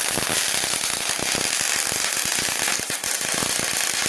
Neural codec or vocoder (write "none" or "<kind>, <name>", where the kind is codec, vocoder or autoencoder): none